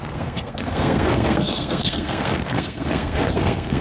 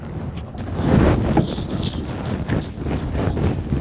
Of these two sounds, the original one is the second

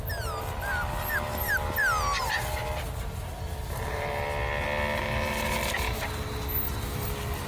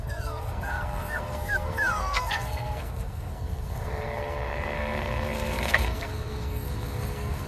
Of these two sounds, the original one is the first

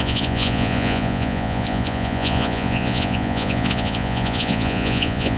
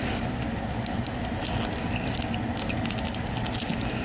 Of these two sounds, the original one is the second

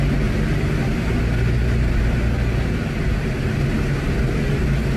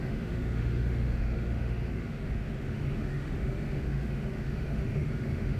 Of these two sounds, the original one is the first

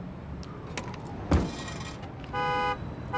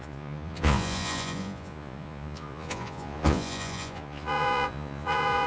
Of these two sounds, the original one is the first